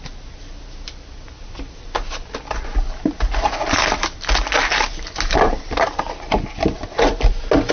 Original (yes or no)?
yes